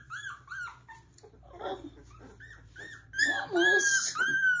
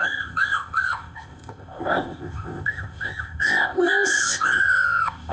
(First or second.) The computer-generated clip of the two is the second